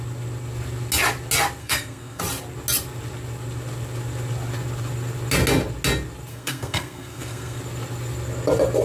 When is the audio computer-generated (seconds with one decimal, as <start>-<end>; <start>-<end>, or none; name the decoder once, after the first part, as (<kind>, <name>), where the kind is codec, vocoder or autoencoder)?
1.6-2.2 (codec, SNAC); 6.3-7.6